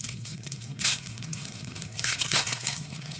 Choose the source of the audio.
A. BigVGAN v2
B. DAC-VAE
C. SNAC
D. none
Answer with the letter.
C